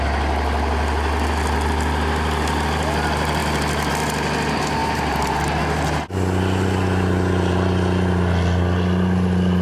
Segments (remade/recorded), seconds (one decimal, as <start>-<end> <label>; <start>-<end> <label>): 0.0-4.8 recorded; 4.8-5.6 remade; 5.6-9.6 recorded

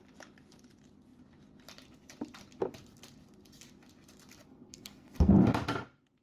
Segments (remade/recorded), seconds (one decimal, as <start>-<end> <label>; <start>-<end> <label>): 0.0-4.5 recorded; 4.5-5.3 remade; 5.3-6.2 recorded

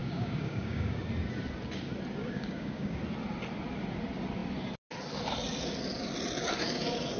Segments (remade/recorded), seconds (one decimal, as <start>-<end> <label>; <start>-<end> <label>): 0.0-1.0 remade; 1.0-2.2 recorded; 2.2-3.0 remade; 3.0-7.2 recorded

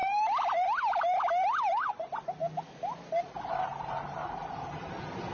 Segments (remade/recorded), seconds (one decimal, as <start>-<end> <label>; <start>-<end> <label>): 0.0-2.4 remade; 2.4-3.5 recorded; 3.5-5.3 remade

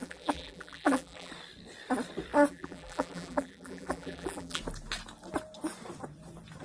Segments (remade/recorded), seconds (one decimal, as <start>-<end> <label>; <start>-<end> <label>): 0.0-1.3 remade; 1.3-2.5 recorded; 2.5-4.6 remade; 4.6-6.6 recorded

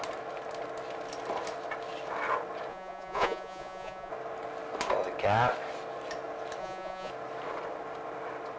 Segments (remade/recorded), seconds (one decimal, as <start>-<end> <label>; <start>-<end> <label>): 0.0-2.7 recorded; 2.7-4.1 remade; 4.1-6.6 recorded; 6.6-7.1 remade; 7.1-8.6 recorded

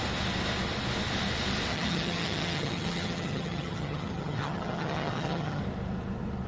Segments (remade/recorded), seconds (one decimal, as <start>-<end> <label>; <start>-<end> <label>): 0.0-1.7 recorded; 1.7-5.6 remade; 5.6-6.5 recorded

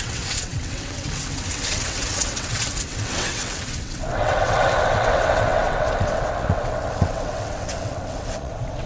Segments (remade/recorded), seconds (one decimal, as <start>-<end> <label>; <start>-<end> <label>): 0.0-8.9 remade